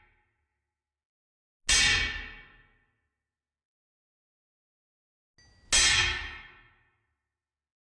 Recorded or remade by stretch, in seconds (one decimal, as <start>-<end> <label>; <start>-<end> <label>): 0.0-7.9 recorded